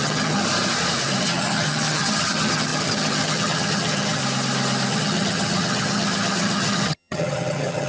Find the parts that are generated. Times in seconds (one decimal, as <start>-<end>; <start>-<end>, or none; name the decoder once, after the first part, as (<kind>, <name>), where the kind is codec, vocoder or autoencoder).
0.0-0.4 (vocoder, HiFi-GAN); 1.2-4.2; 4.9-7.9